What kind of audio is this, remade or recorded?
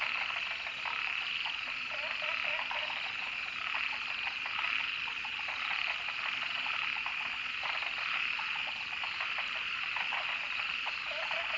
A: recorded